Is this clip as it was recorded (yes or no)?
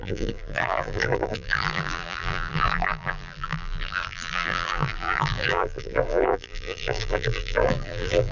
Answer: no